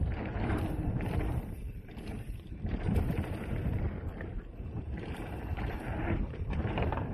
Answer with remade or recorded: remade